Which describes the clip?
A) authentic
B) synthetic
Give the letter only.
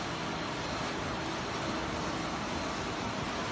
A